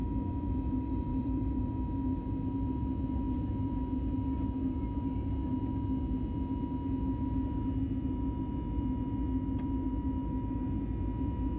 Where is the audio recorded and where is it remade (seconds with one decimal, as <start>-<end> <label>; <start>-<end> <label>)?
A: 0.0-1.1 recorded; 1.1-1.6 remade; 1.6-11.6 recorded